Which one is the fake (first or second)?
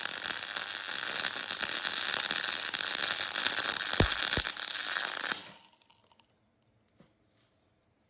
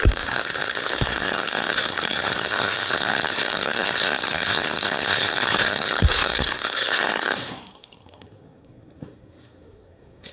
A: second